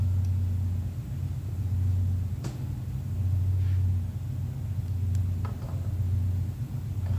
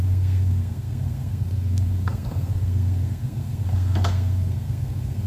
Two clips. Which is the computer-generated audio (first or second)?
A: second